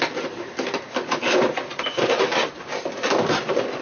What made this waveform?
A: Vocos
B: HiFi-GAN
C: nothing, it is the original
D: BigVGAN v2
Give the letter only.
C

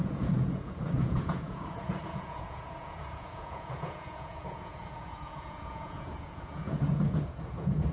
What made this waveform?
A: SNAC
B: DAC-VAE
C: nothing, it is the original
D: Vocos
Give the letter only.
D